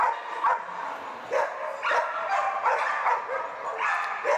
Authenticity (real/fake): real